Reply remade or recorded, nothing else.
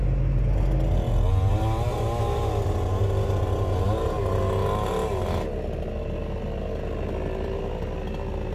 recorded